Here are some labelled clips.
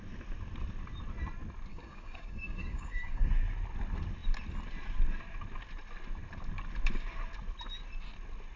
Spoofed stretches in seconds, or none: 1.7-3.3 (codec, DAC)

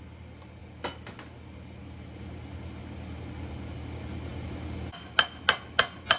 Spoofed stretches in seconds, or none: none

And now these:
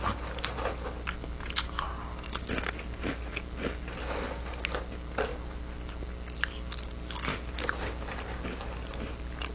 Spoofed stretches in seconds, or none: none

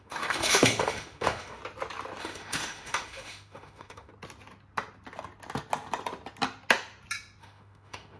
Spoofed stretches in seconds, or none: 0.0-1.6 (autoencoder, DAC-VAE); 2.2-4.1; 7.4-8.2